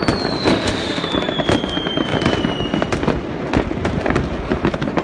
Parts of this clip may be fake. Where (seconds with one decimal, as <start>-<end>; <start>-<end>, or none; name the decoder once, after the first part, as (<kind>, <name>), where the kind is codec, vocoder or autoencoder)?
0.5-1.1 (autoencoder, DAC-VAE)